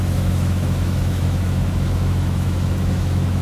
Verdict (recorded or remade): remade